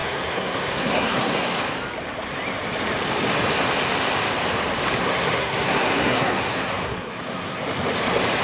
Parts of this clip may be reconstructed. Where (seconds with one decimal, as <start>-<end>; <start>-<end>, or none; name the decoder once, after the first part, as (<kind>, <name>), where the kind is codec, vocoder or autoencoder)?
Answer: 0.0-1.6 (codec, SNAC); 5.0-7.6